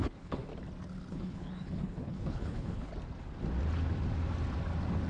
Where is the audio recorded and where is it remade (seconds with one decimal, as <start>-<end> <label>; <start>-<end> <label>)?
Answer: 0.0-0.5 remade; 0.5-1.1 recorded; 1.1-2.9 remade; 2.9-5.1 recorded